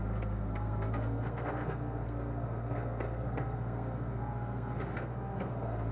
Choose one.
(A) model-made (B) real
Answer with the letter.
A